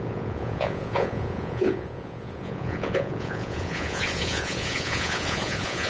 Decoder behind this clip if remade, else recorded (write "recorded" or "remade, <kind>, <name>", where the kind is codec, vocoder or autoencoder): remade, vocoder, Vocos